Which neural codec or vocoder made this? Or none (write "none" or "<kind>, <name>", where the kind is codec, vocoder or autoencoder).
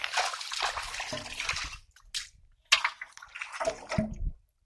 none